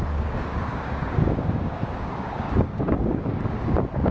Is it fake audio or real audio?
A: fake